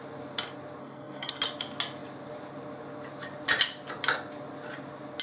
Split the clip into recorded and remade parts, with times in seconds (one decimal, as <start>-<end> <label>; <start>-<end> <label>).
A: 0.0-0.8 recorded; 0.8-1.3 remade; 1.3-5.2 recorded